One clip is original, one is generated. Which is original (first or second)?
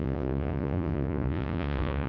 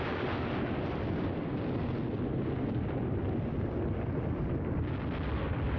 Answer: second